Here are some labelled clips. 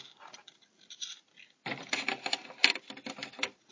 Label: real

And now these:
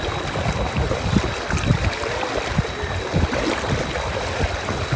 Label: real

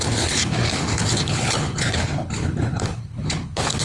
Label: fake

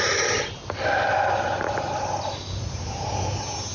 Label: real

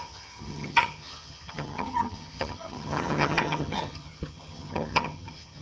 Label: fake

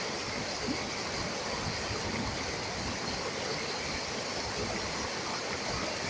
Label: real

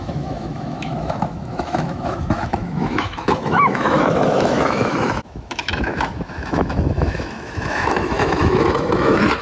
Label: fake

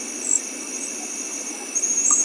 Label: real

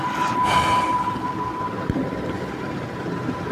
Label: real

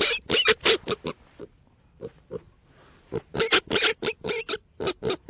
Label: fake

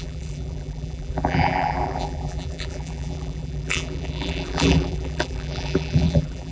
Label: fake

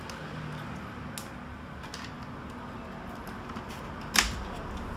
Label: real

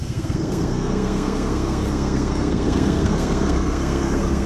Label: fake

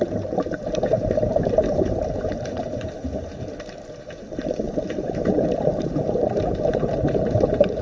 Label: fake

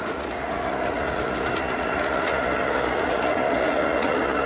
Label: fake